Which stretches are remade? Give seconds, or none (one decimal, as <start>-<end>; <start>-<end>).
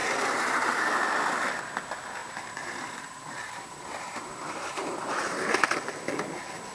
0.0-0.9; 2.2-5.9